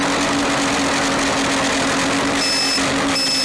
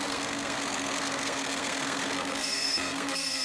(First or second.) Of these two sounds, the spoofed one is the second